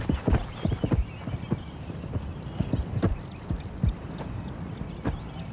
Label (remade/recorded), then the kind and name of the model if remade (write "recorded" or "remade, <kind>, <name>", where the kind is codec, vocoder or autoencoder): remade, vocoder, BigVGAN v2